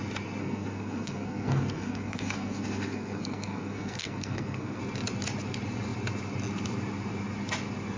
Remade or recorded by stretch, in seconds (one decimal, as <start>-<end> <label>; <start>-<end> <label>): 0.0-0.4 recorded; 0.4-4.8 remade; 4.8-8.0 recorded